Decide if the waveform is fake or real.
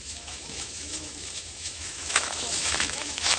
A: fake